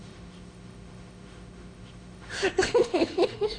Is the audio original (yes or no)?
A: no